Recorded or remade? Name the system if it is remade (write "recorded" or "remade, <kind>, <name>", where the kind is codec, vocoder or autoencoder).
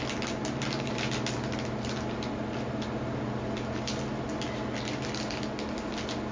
recorded